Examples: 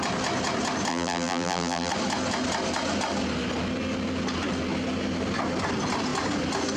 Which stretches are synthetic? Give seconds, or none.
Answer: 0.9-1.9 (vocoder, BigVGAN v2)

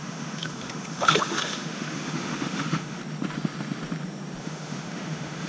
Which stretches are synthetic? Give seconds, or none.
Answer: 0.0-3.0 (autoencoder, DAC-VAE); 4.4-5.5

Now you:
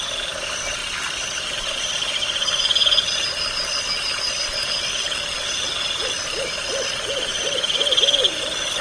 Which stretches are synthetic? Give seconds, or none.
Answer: 0.8-4.7 (vocoder, BigVGAN v2); 7.3-8.2

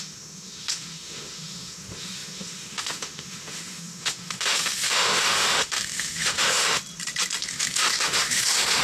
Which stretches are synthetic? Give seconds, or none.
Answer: 0.0-6.8 (autoencoder, DAC-VAE); 7.4-8.8